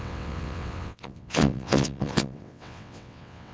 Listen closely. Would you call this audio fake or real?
fake